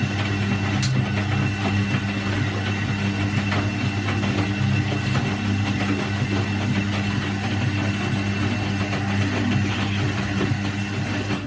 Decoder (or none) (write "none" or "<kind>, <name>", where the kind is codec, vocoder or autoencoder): none